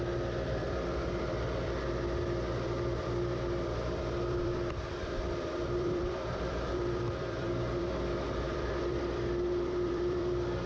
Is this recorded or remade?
remade